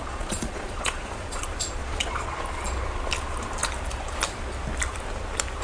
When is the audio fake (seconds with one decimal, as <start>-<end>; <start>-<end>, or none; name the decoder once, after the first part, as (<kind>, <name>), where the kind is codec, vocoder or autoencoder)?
0.0-1.4 (vocoder, Vocos); 1.8-2.4